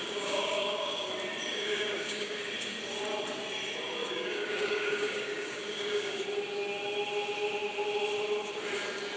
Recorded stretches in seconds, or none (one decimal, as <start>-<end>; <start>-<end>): 1.1-1.5; 2.4-4.0; 6.2-9.2